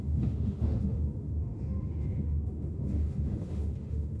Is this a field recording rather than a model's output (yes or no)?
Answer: no